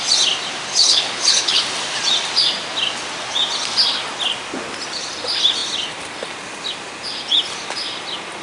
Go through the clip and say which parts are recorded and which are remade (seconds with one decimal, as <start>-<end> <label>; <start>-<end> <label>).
0.0-0.7 recorded; 0.7-1.6 remade; 1.6-8.4 recorded